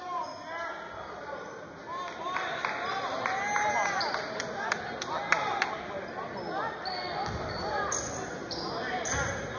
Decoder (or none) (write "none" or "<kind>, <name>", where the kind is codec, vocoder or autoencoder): none